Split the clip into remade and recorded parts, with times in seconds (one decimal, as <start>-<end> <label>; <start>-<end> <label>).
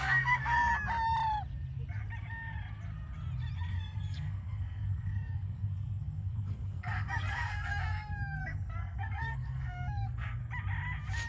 0.0-0.7 remade; 0.7-3.7 recorded; 3.7-10.4 remade; 10.4-11.3 recorded